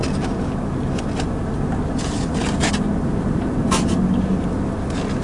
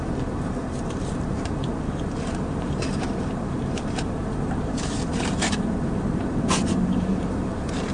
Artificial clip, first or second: second